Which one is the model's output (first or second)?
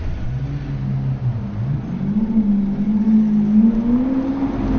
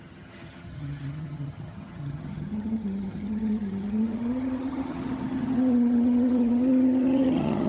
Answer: second